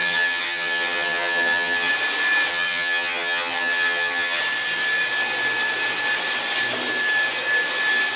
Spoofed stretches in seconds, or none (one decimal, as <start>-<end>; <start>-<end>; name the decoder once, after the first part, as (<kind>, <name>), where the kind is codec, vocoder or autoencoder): 0.0-1.9 (vocoder, HiFi-GAN); 2.5-4.4